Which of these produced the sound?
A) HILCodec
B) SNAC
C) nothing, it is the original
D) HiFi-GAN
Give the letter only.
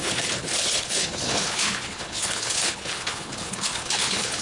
A